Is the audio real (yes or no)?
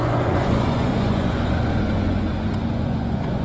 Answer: no